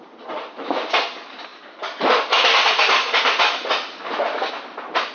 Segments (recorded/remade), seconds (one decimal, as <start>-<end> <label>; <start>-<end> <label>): 0.0-5.1 recorded